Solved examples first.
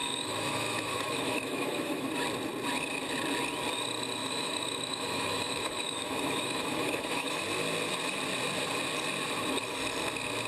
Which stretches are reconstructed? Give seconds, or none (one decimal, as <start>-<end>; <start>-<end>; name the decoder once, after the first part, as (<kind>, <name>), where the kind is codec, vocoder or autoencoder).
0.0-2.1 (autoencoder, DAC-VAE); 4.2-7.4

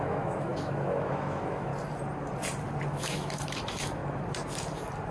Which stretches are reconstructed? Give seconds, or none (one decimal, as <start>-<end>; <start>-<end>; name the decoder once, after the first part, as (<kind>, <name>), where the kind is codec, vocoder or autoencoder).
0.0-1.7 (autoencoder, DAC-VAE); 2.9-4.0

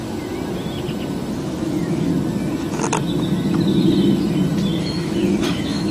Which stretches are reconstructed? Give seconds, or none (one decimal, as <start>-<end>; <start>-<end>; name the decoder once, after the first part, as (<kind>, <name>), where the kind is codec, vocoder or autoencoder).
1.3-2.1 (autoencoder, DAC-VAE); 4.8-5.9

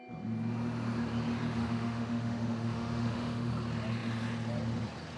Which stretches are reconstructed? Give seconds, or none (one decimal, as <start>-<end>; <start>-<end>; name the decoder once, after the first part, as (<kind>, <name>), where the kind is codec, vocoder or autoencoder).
1.6-3.5 (autoencoder, DAC-VAE)